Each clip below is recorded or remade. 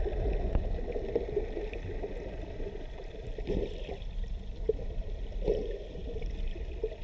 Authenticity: recorded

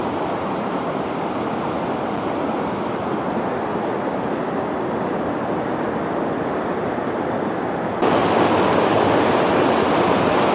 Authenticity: recorded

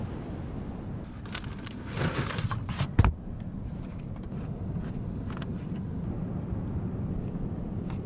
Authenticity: recorded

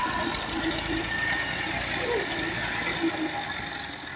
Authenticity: recorded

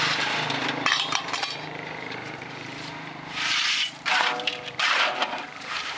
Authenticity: remade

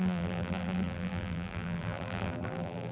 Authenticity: remade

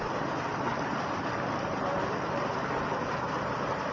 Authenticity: remade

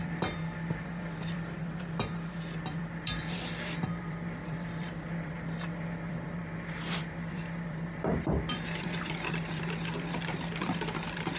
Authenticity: remade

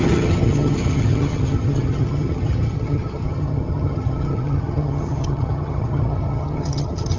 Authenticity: remade